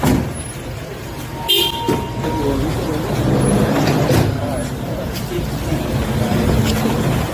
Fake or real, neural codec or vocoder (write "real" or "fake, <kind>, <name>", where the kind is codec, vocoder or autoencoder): real